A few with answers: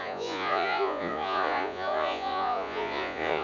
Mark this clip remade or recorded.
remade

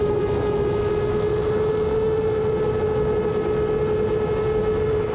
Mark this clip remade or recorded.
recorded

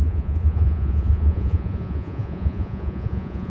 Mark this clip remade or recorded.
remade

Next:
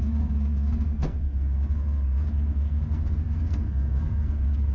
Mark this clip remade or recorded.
remade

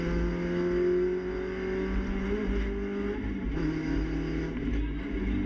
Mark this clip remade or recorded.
recorded